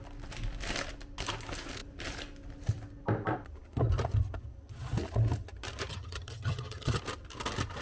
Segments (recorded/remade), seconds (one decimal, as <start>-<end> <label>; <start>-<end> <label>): 0.0-5.9 recorded; 5.9-7.0 remade; 7.0-7.8 recorded